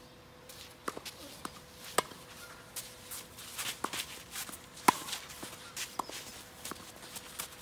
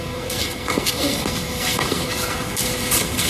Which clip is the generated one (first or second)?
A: second